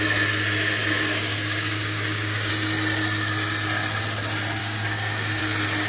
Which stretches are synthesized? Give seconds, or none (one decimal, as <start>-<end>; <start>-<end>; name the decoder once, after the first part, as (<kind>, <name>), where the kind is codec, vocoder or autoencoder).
0.8-2.5 (codec, DAC); 4.6-5.4